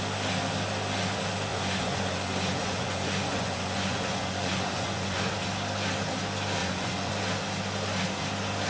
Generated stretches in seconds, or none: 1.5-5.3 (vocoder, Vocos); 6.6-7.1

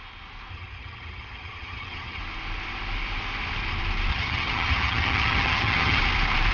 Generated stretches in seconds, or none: 0.5-2.2 (vocoder, HiFi-GAN); 4.1-6.0

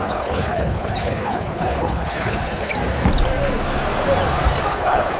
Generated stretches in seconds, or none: 0.0-2.7 (codec, HILCodec); 4.7-5.2

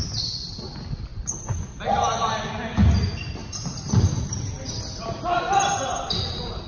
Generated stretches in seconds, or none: none